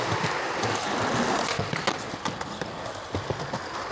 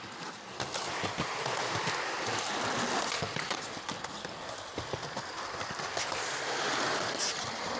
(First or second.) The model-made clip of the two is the second